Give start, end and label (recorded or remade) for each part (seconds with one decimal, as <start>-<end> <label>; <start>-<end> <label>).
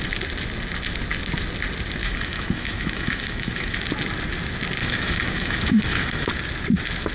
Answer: 0.0-2.0 recorded; 2.0-3.8 remade; 3.8-4.8 recorded; 4.8-6.3 remade; 6.3-7.1 recorded